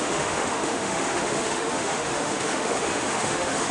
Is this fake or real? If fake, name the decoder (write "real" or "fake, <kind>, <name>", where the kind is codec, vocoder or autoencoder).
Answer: fake, autoencoder, DAC-VAE